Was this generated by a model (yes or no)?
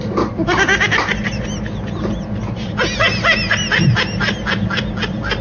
no